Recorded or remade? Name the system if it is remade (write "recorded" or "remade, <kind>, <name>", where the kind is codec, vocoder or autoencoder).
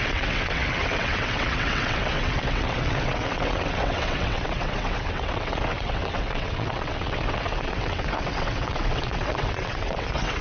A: remade, vocoder, WaveNeXt